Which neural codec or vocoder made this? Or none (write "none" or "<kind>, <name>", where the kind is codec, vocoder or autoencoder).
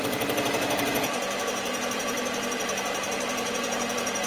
vocoder, BigVGAN v2